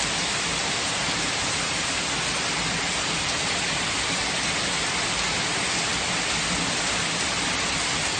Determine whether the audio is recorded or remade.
recorded